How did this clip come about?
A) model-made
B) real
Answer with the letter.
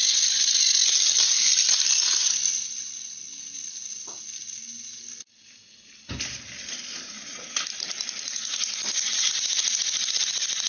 B